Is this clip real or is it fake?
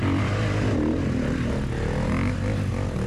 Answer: real